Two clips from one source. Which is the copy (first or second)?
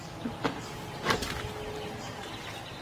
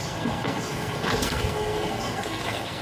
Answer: second